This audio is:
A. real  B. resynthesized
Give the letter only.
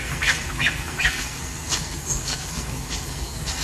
B